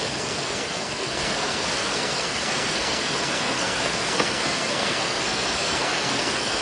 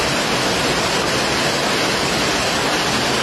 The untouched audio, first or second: second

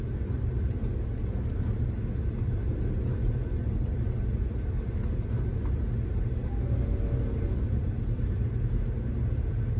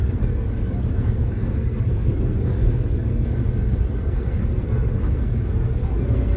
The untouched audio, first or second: first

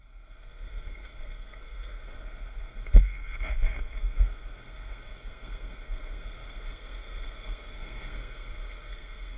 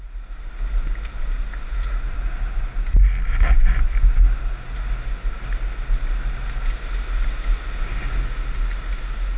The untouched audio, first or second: second